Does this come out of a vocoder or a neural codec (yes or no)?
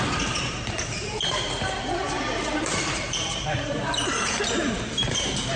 yes